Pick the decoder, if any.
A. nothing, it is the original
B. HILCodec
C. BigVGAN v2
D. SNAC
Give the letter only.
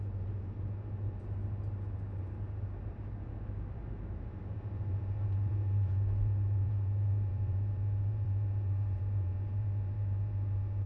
C